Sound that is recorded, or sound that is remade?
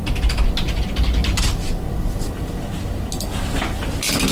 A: recorded